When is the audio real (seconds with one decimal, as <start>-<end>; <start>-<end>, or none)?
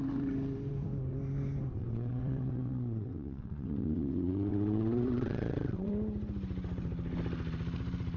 0.0-1.7; 5.9-8.2